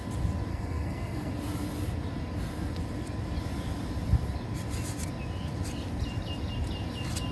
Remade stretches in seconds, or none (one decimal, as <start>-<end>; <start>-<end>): 0.5-1.3